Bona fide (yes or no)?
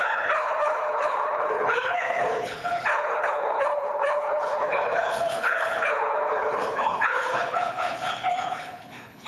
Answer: no